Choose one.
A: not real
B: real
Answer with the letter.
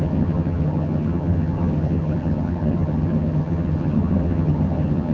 A